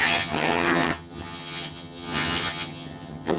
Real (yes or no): no